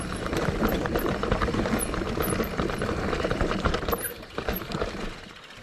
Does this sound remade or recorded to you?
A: remade